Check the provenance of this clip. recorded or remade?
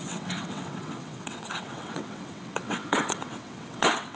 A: remade